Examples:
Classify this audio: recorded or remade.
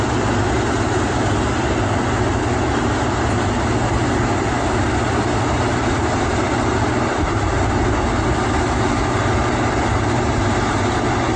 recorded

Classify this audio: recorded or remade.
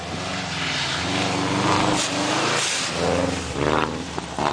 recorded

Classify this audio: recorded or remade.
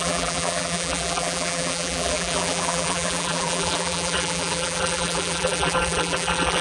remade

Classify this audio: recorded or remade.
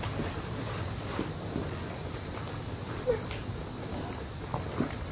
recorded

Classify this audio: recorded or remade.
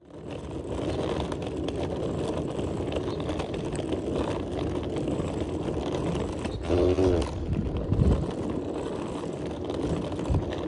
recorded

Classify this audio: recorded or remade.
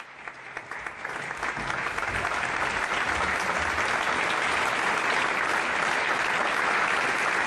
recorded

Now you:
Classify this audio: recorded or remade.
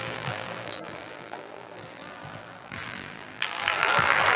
remade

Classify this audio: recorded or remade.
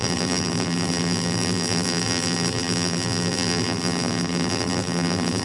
remade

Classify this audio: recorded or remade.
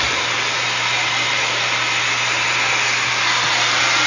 recorded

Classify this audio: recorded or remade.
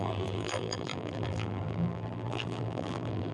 remade